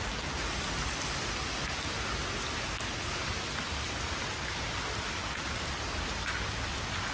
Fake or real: real